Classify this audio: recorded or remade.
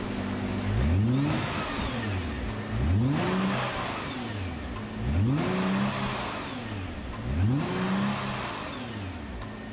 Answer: recorded